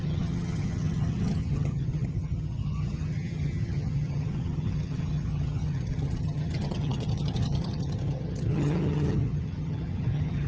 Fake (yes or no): yes